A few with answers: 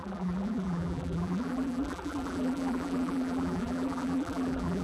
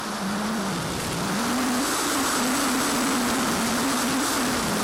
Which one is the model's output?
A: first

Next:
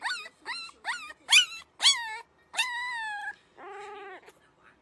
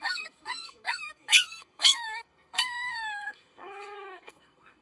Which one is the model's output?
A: second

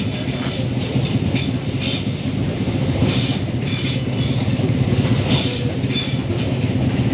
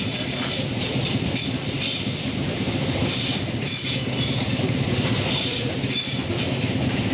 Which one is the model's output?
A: second